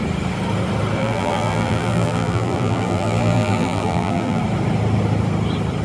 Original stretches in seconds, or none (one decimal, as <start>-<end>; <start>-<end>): 0.0-1.0; 4.4-5.8